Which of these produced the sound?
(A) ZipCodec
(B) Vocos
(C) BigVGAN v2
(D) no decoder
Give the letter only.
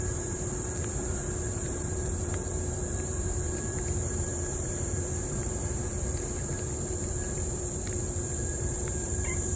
C